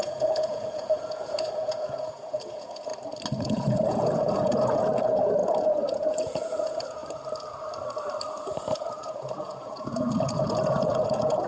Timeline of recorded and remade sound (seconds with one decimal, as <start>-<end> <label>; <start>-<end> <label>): 0.0-2.9 remade; 2.9-3.4 recorded; 3.4-7.0 remade; 7.0-8.4 recorded; 8.4-11.5 remade